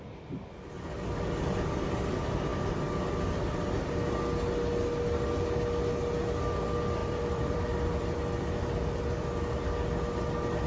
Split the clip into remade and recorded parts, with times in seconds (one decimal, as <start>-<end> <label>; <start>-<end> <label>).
0.0-7.0 recorded; 7.0-8.5 remade; 8.5-10.7 recorded